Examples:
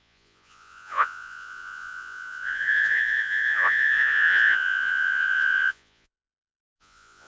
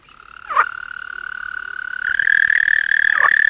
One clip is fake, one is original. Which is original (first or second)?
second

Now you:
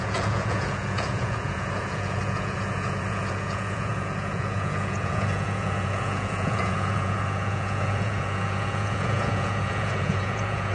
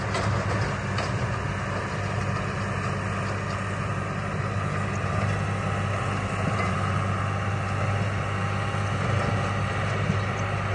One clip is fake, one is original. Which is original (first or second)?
second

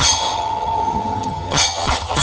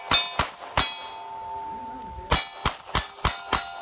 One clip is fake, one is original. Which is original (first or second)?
second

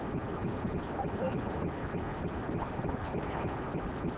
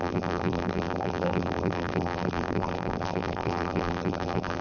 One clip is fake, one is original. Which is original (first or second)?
first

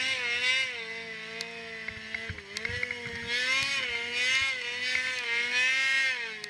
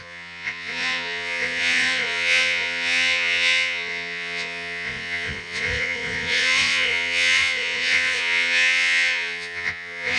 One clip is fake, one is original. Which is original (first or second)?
first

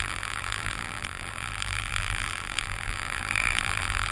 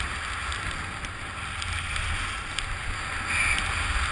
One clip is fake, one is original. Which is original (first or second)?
second